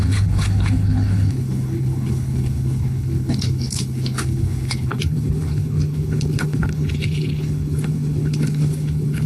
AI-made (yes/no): yes